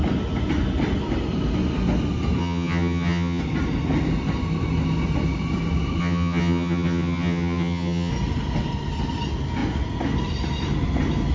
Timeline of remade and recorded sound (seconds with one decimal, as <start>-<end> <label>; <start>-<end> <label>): 0.0-2.4 recorded; 2.4-3.4 remade; 3.4-6.0 recorded; 6.0-8.1 remade; 8.1-11.3 recorded

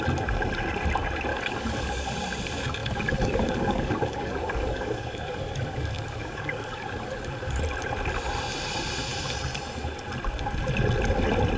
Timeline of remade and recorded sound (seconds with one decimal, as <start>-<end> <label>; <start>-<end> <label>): 0.0-1.3 recorded; 1.3-2.1 remade; 2.1-2.8 recorded; 2.8-7.6 remade; 7.6-11.6 recorded

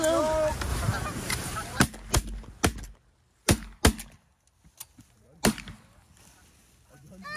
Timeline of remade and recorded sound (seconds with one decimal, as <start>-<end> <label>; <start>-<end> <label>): 0.0-0.7 recorded; 0.7-1.8 remade; 1.8-7.4 recorded

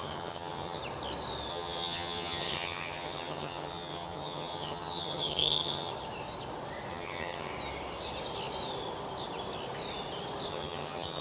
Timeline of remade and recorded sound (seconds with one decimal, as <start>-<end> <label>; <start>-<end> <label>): 0.0-0.8 remade; 0.8-1.5 recorded; 1.5-5.9 remade; 5.9-6.9 recorded; 6.9-7.5 remade; 7.5-10.5 recorded; 10.5-11.2 remade

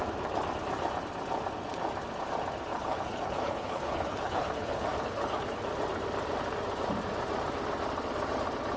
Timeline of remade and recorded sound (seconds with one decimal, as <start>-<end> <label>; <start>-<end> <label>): 0.0-2.7 recorded; 2.7-5.5 remade; 5.5-8.8 recorded

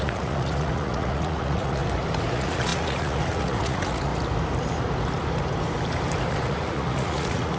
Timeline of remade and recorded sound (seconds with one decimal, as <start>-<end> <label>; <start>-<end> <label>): 0.0-1.8 remade; 1.8-2.3 recorded; 2.3-4.1 remade; 4.1-6.3 recorded; 6.3-7.6 remade